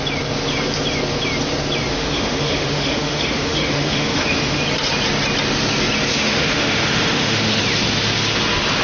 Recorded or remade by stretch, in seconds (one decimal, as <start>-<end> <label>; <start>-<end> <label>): 0.0-1.9 recorded; 1.9-4.6 remade; 4.6-6.1 recorded; 6.1-7.6 remade; 7.6-8.8 recorded